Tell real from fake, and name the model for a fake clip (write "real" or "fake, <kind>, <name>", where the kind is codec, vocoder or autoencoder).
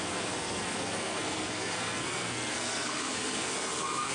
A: fake, codec, SNAC